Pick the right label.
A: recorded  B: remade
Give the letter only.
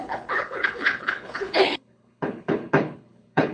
B